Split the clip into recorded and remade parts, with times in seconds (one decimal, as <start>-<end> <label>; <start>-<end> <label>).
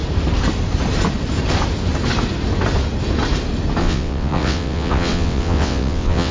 0.0-3.8 recorded; 3.8-6.3 remade